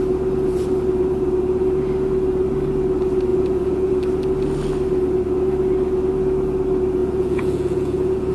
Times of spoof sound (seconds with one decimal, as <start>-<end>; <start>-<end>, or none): 3.3-3.9; 7.0-8.3